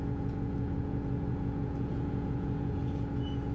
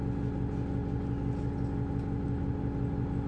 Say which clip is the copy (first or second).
first